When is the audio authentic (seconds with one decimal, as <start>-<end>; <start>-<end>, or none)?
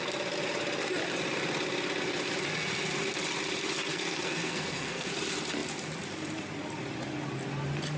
0.0-3.9; 5.1-8.0